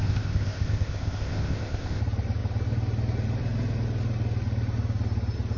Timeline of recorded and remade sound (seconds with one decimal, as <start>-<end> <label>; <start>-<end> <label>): 0.0-2.0 remade; 2.0-5.6 recorded

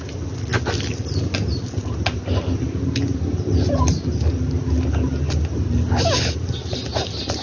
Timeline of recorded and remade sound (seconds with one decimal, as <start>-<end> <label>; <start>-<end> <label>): 0.0-7.4 recorded

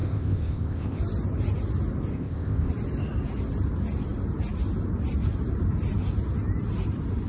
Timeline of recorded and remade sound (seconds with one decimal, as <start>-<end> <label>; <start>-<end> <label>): 0.0-1.0 remade; 1.0-2.1 recorded; 2.1-2.7 remade; 2.7-7.3 recorded

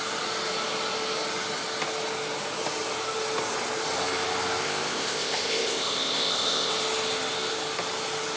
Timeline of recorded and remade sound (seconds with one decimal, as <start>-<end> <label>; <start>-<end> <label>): 0.0-4.6 recorded; 4.6-6.7 remade; 6.7-8.4 recorded

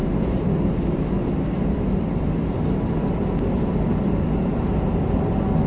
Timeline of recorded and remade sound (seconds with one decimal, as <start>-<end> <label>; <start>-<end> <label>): 0.0-5.7 recorded

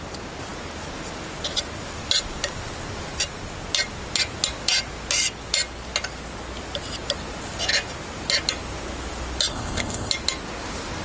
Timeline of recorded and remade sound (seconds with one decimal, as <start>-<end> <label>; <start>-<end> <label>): 0.0-9.5 recorded; 9.5-10.1 remade; 10.1-11.0 recorded

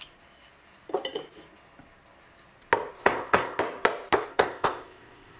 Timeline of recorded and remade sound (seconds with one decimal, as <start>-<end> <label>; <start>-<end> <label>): 0.0-3.0 recorded; 3.0-3.6 remade; 3.6-4.3 recorded; 4.3-5.4 remade

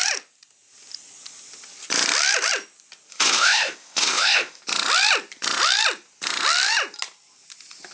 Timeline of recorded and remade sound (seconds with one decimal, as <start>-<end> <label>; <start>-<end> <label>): 0.0-3.1 recorded; 3.1-4.6 remade; 4.6-7.9 recorded